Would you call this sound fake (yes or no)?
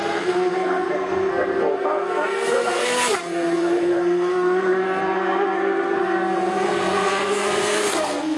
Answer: yes